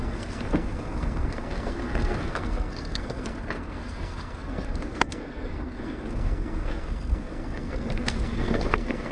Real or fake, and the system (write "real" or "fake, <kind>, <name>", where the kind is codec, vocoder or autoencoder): fake, codec, SNAC